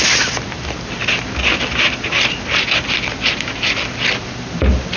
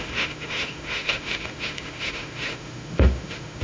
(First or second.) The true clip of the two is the first